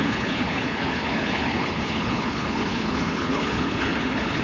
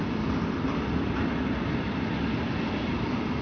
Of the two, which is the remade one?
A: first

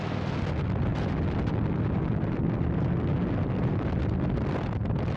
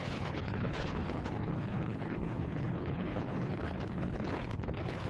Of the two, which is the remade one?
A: second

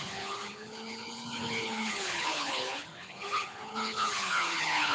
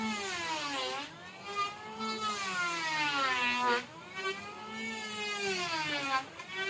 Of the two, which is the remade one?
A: first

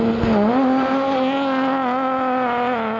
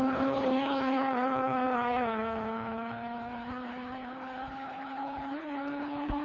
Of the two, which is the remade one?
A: second